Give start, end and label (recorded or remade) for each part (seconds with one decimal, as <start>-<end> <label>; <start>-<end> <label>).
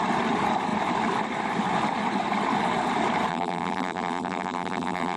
0.0-3.3 recorded; 3.3-5.2 remade